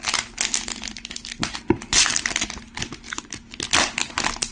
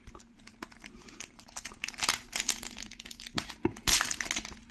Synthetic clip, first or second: second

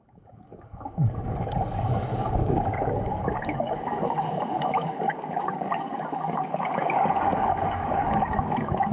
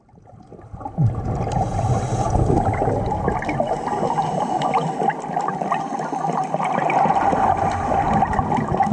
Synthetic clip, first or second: first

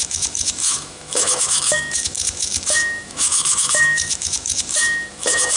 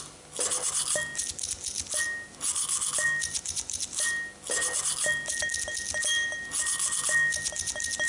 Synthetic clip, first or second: first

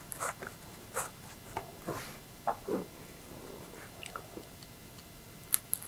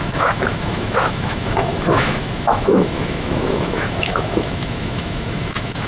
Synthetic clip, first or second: second